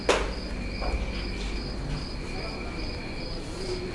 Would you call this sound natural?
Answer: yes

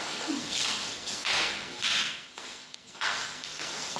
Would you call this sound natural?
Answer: no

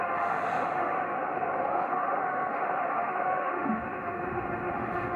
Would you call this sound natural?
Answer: no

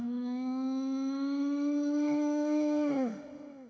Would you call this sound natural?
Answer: no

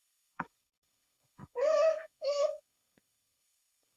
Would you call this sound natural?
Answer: no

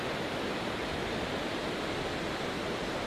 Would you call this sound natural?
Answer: yes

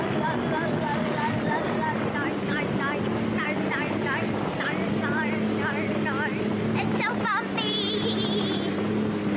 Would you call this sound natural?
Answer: yes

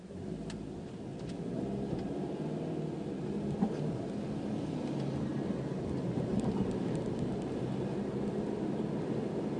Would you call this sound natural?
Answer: yes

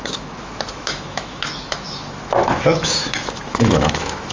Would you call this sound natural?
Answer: no